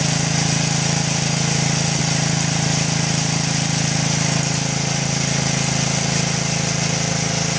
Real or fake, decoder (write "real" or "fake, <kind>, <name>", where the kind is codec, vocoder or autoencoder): real